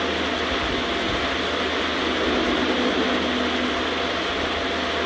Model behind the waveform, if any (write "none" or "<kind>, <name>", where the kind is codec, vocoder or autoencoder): none